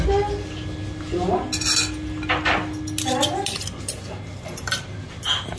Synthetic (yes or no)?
no